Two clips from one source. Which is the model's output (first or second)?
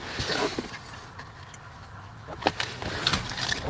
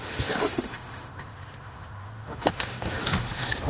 second